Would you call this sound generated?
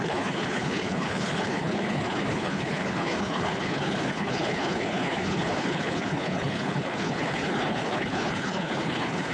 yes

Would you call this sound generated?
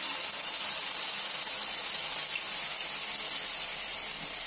no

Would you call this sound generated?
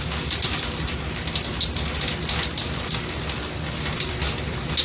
no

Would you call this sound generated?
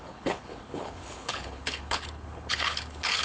yes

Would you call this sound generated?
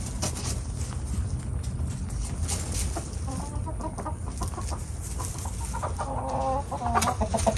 no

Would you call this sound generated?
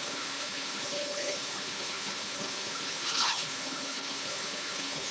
yes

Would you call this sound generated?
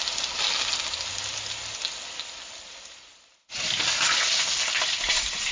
no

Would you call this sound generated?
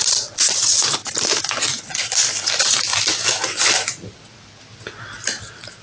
no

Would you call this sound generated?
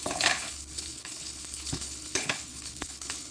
yes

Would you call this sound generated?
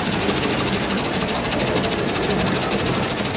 no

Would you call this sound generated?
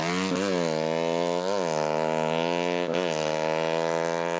no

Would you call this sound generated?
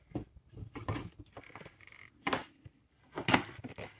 no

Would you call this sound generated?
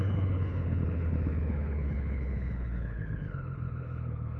yes